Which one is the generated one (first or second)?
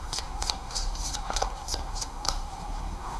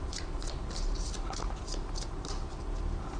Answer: first